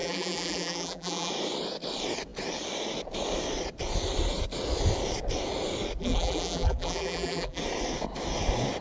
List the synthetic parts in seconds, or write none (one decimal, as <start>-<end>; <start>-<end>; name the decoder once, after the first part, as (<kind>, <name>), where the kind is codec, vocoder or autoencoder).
0.0-1.3 (vocoder, BigVGAN v2); 6.0-7.6